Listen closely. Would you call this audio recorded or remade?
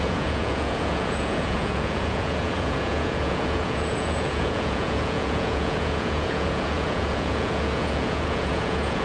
remade